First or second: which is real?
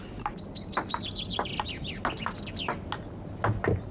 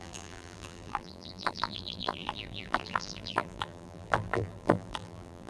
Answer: first